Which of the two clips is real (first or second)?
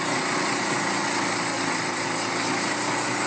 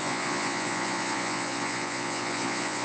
first